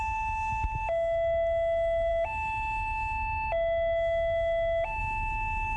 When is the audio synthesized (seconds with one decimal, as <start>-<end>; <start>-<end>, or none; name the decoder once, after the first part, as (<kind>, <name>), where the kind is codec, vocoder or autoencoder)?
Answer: none